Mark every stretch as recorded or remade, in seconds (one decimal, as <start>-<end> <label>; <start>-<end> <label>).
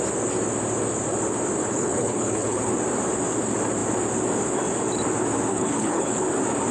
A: 0.0-1.6 recorded; 1.6-2.7 remade; 2.7-5.5 recorded; 5.5-6.2 remade; 6.2-6.7 recorded